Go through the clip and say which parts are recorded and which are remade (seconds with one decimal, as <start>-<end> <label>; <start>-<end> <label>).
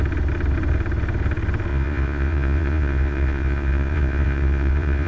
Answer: 0.0-1.7 recorded; 1.7-5.1 remade